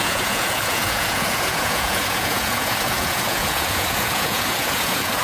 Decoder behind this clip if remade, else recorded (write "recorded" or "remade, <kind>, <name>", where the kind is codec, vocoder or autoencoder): remade, vocoder, Vocos